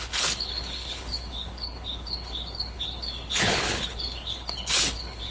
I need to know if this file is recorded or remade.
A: remade